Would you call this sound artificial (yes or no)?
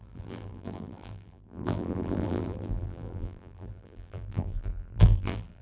yes